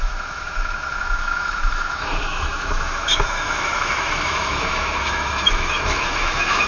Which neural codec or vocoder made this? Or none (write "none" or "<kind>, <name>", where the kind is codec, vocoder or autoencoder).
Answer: autoencoder, DAC-VAE